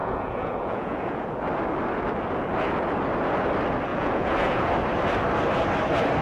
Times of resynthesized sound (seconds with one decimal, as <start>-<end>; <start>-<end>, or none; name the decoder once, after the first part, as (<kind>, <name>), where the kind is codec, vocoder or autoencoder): 0.0-1.3 (vocoder, Vocos); 3.9-4.7